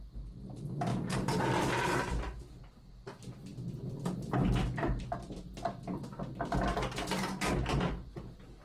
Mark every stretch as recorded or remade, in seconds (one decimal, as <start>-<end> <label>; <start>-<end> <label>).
0.0-8.6 recorded